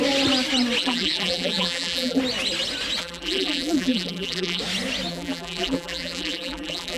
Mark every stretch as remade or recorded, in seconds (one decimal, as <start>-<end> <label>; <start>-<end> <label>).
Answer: 0.0-0.8 recorded; 0.8-2.2 remade; 2.2-3.0 recorded; 3.0-4.6 remade; 4.6-5.1 recorded; 5.1-7.0 remade